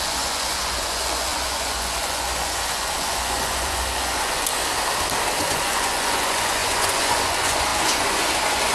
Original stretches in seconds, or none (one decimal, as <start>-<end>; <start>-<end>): 4.5-5.4